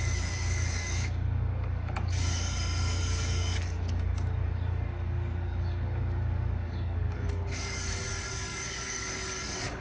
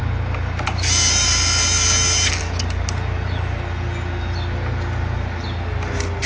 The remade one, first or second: first